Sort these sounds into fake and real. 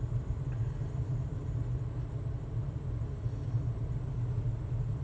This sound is fake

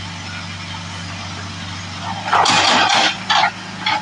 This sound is real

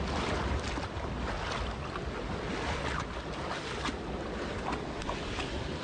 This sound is real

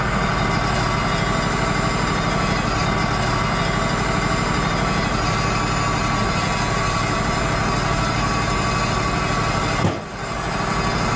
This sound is real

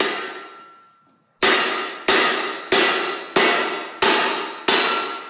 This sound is real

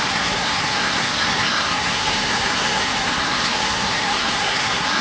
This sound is fake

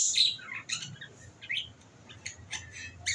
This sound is real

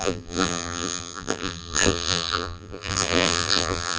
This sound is fake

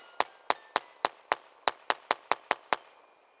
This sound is real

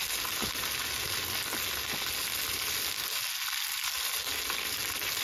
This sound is real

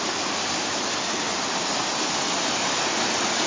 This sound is real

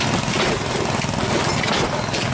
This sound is real